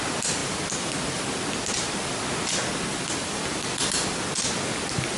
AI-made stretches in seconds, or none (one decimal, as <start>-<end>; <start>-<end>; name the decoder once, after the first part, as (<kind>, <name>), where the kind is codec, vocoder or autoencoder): none

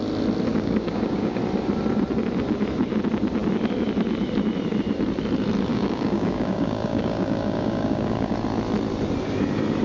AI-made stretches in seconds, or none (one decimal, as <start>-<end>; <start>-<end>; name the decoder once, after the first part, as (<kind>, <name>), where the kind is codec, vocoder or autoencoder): 0.5-1.4 (codec, DAC); 5.7-8.3

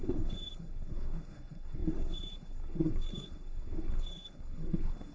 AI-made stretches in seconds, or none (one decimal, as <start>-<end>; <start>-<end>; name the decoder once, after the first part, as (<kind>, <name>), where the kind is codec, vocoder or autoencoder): 0.0-5.1 (codec, SNAC)

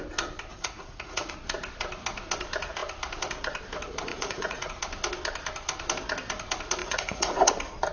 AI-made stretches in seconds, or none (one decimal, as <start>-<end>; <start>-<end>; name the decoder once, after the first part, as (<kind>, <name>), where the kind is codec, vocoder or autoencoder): 0.5-1.3 (vocoder, Vocos); 4.1-4.7; 6.8-7.5

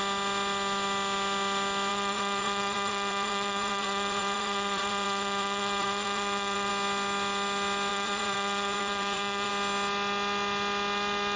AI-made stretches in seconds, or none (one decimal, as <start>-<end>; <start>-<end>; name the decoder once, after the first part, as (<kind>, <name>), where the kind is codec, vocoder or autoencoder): 1.9-6.7 (vocoder, Vocos); 7.9-9.5

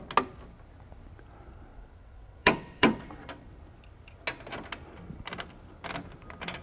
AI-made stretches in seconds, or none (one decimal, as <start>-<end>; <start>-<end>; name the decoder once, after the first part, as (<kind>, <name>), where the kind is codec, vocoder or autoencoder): 1.7-3.6 (vocoder, WaveNeXt)